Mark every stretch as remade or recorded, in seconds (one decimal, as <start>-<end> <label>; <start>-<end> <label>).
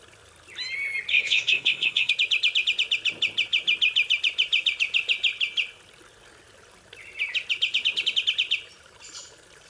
0.0-1.1 recorded; 1.1-2.1 remade; 2.1-9.7 recorded